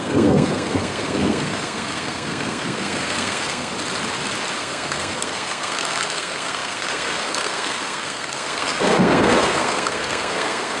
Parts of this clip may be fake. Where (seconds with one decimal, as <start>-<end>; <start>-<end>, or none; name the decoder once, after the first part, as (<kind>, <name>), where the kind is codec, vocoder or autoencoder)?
0.0-3.7 (codec, SNAC); 4.6-10.8